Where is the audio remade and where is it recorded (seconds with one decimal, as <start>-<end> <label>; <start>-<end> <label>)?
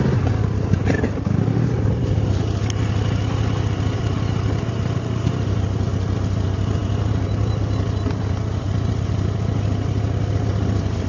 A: 0.0-11.1 recorded